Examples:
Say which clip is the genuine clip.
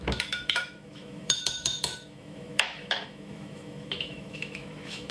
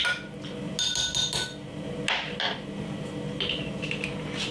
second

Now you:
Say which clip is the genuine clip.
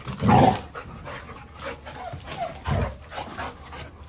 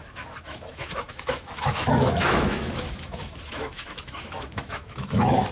first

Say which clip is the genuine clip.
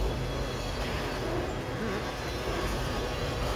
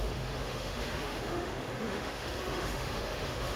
first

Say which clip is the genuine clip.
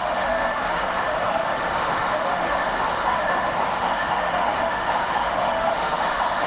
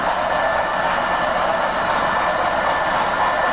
second